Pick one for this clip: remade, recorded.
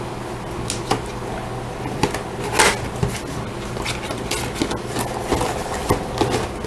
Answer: recorded